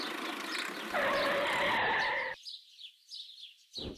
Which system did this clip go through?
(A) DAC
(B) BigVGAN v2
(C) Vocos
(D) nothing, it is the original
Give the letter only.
B